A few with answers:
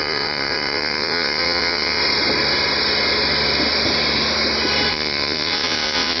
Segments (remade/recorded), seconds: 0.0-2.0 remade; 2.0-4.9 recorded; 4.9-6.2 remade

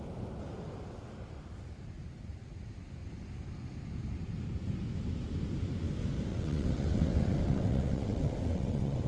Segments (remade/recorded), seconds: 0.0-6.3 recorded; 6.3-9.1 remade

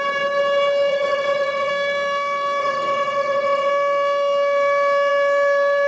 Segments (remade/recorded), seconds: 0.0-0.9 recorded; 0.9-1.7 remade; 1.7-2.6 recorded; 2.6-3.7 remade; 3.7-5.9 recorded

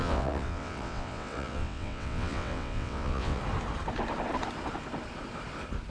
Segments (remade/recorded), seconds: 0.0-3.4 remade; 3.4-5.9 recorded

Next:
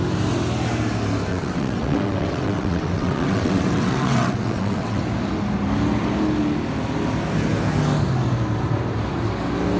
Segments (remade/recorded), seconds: 0.0-1.3 recorded; 1.3-5.0 remade; 5.0-9.8 recorded

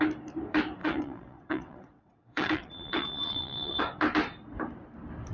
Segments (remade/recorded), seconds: 0.0-0.8 recorded; 0.8-3.8 remade; 3.8-5.3 recorded